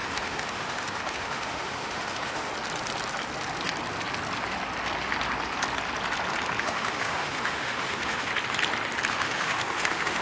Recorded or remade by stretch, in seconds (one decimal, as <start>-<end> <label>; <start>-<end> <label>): 0.0-2.5 remade; 2.5-6.6 recorded; 6.6-8.3 remade; 8.3-9.1 recorded; 9.1-10.2 remade